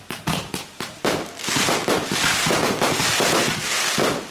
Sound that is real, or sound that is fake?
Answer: fake